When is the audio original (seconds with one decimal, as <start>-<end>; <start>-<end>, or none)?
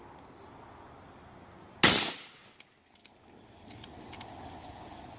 0.0-3.0; 3.6-5.2